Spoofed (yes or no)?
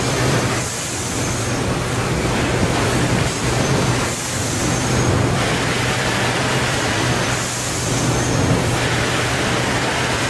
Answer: yes